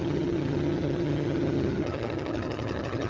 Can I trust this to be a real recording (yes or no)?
no